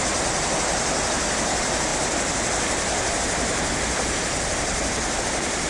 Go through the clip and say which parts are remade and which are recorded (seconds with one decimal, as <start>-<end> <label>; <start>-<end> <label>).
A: 0.0-5.7 recorded